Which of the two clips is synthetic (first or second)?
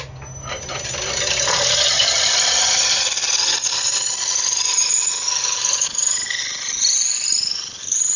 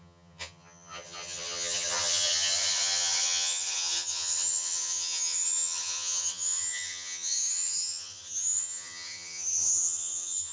second